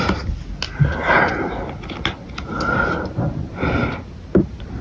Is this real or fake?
real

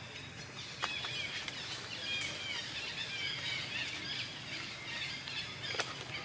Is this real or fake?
real